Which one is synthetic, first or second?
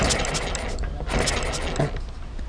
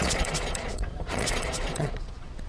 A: second